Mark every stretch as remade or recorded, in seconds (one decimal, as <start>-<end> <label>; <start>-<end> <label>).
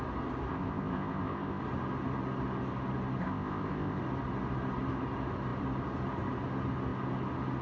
0.0-0.5 recorded; 0.5-1.6 remade; 1.6-3.2 recorded; 3.2-4.0 remade; 4.0-7.6 recorded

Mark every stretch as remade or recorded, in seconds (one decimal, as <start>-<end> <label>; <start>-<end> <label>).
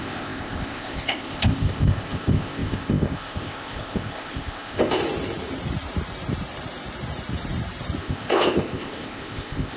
0.0-5.0 remade; 5.0-8.0 recorded; 8.0-9.8 remade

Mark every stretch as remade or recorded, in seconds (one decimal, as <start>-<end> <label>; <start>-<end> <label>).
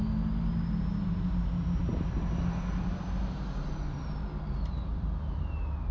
0.0-5.9 recorded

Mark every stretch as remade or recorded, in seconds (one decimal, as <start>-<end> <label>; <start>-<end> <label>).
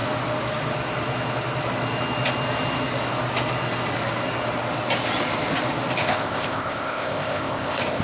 0.0-6.0 recorded; 6.0-8.0 remade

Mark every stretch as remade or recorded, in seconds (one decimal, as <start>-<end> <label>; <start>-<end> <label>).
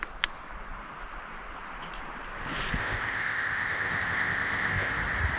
0.0-2.8 recorded; 2.8-4.9 remade; 4.9-5.4 recorded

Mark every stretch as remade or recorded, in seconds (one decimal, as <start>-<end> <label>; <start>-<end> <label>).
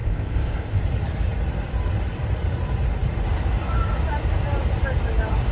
0.0-0.8 remade; 0.8-5.5 recorded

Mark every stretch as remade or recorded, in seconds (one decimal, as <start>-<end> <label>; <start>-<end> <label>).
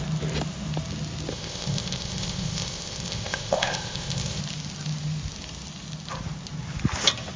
0.0-1.3 recorded; 1.3-4.4 remade; 4.4-7.4 recorded